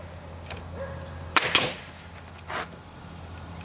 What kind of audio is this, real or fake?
real